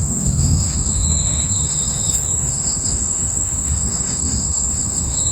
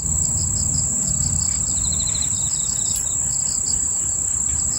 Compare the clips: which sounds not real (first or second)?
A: first